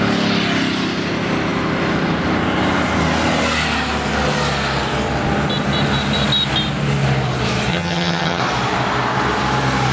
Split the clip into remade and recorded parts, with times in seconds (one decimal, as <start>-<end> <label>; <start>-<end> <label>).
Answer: 0.0-7.7 recorded; 7.7-8.4 remade; 8.4-9.9 recorded